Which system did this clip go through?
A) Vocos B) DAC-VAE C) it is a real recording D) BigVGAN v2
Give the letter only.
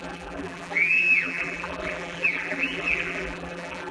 D